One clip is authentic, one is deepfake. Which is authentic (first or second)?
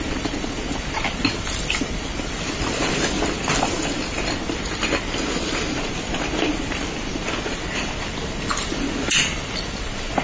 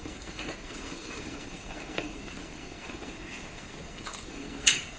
first